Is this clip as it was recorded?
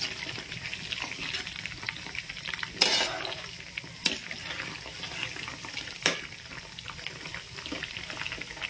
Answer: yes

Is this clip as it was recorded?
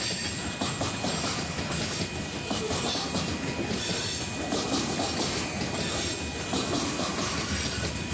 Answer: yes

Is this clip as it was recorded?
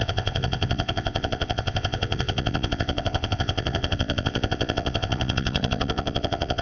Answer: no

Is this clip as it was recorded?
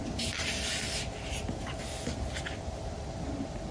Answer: yes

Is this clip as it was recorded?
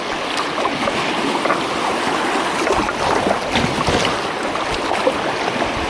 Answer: yes